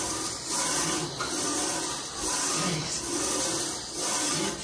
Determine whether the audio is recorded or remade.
remade